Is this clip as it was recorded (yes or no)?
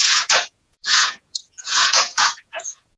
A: no